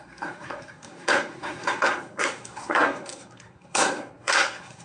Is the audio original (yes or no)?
no